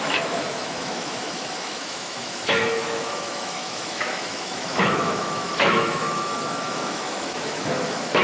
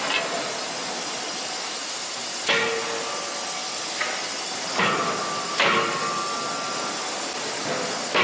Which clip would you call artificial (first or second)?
first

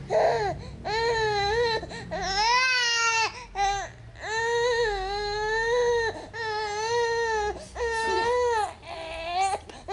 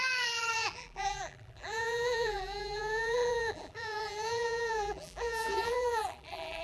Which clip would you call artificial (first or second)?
second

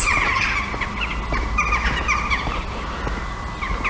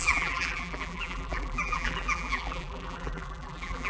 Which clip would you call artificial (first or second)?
second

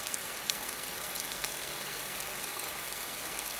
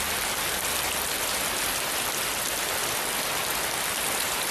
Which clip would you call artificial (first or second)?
first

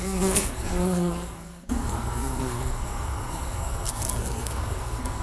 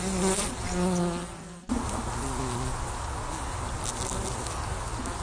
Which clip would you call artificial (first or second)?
first